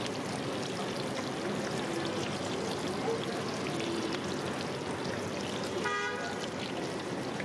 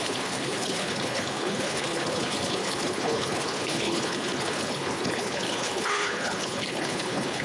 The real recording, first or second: first